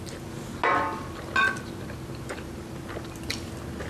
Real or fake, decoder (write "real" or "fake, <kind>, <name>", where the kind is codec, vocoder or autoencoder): real